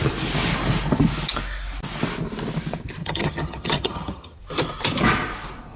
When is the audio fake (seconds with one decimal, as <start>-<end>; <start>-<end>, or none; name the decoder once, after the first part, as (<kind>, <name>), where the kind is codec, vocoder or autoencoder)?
3.0-4.4 (vocoder, HiFi-GAN)